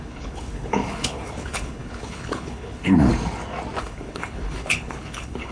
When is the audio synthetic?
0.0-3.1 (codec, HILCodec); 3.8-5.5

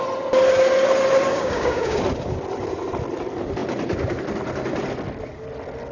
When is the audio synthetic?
1.3-2.0 (codec, DAC)

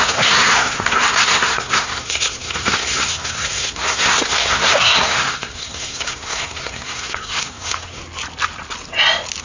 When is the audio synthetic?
0.0-8.0 (codec, SNAC)

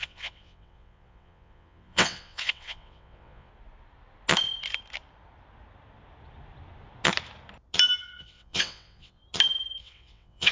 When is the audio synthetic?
0.0-3.5 (vocoder, WaveNeXt); 8.0-9.2; 9.8-10.5

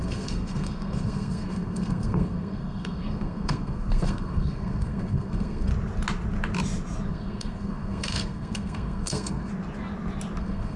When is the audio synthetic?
0.0-5.7 (codec, SNAC); 7.1-9.5; 10.4-10.8

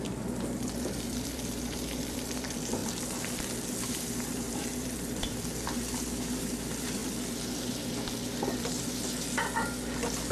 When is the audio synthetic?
0.0-7.0 (vocoder, BigVGAN v2)

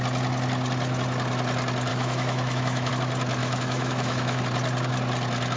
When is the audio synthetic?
1.9-2.9 (autoencoder, DAC-VAE); 3.4-4.4